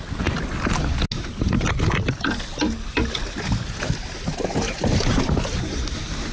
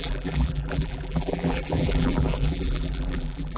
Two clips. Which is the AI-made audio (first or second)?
second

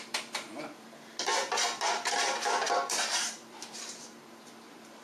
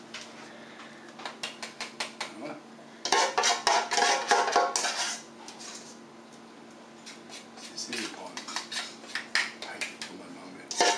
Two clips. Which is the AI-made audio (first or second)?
first